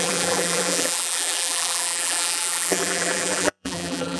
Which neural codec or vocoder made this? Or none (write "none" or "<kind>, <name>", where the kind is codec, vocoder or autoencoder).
vocoder, BigVGAN v2